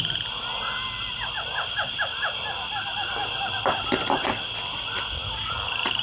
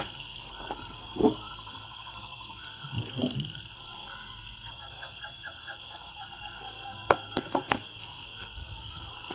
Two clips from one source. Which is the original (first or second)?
first